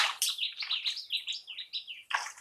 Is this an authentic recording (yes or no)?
yes